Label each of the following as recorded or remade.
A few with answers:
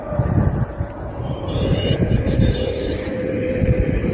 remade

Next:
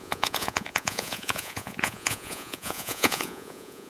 remade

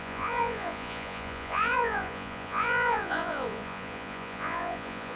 remade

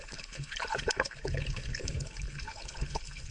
remade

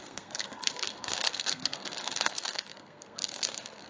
remade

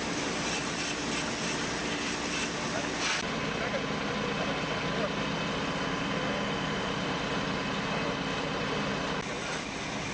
recorded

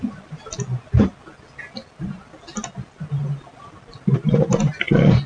recorded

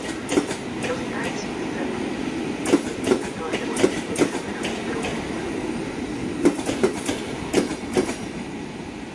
recorded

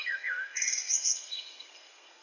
remade